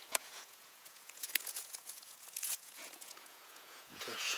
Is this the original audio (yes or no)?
no